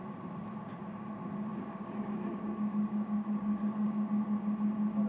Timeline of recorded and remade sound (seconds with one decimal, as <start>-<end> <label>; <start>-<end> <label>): 0.0-1.5 recorded; 1.5-4.1 remade; 4.1-5.1 recorded